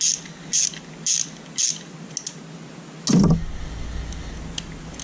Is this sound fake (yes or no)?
no